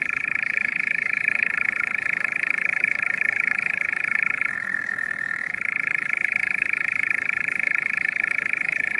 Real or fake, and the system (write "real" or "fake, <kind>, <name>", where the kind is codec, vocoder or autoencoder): fake, codec, HILCodec